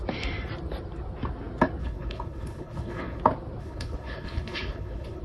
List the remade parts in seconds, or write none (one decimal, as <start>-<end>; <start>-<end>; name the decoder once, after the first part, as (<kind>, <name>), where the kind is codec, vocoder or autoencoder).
1.8-3.2 (codec, HILCodec); 3.6-5.2